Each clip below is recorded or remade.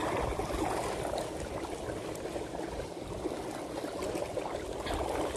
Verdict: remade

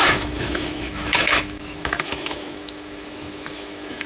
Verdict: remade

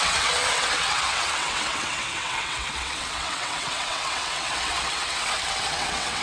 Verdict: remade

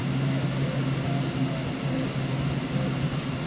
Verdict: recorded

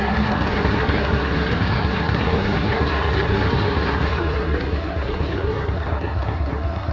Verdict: remade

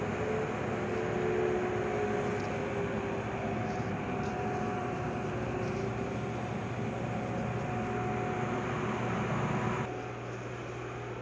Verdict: recorded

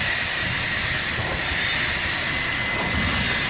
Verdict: recorded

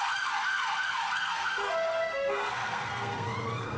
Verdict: remade